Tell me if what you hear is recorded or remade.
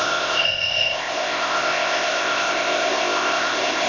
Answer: remade